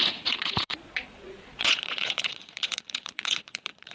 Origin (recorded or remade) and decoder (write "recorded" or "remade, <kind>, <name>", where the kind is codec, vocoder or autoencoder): remade, vocoder, Vocos